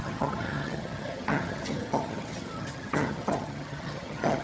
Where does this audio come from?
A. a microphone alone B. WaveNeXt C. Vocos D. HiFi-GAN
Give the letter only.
D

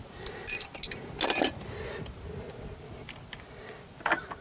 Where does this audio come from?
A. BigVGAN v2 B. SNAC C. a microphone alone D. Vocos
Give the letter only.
C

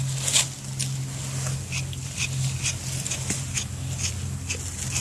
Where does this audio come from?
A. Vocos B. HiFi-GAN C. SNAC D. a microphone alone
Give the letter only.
D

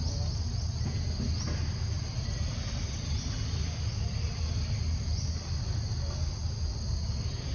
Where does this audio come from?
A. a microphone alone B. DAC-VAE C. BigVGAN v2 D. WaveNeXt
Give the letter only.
A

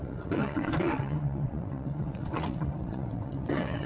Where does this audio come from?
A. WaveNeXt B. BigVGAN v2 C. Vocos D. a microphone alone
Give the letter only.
A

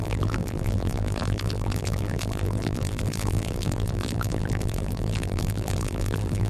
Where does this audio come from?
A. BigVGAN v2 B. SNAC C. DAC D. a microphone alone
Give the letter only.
A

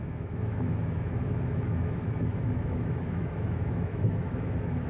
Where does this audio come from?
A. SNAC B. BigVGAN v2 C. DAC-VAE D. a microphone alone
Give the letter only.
C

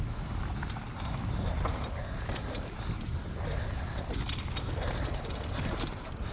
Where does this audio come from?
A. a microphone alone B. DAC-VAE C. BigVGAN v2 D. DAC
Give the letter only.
A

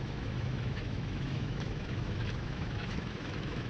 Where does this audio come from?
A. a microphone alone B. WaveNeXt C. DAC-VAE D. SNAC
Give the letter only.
C